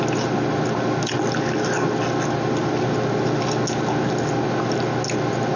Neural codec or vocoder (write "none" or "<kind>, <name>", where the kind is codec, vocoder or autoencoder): none